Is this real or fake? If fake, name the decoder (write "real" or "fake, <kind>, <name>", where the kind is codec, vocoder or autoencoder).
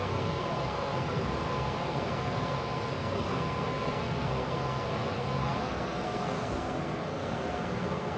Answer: fake, codec, SNAC